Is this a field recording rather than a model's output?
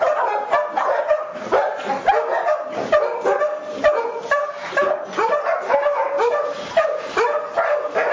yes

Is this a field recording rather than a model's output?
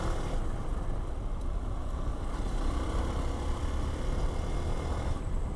yes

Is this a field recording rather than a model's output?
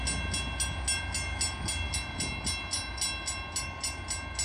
yes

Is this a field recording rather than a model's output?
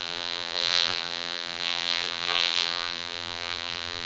no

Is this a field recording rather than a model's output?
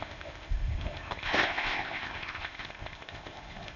no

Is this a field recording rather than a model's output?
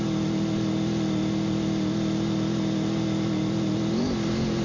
yes